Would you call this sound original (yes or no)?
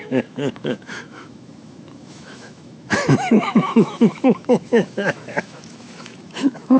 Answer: no